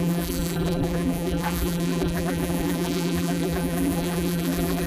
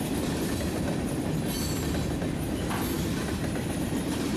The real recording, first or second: second